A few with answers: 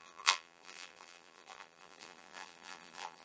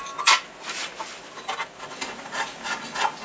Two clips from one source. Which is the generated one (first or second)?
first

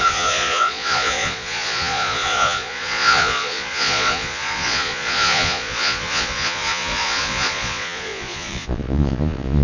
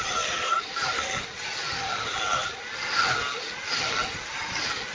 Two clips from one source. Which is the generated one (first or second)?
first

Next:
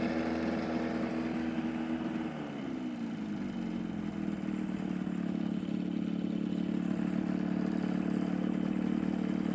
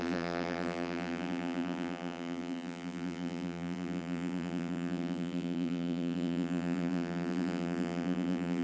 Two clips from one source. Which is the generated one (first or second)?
second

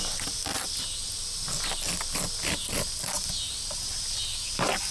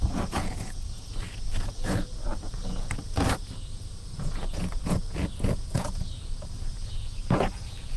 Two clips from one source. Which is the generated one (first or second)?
second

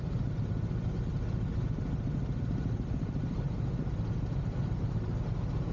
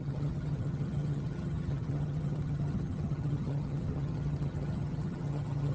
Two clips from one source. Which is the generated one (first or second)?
second